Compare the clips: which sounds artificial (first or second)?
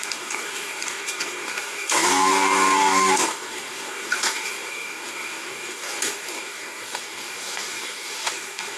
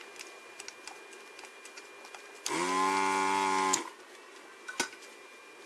first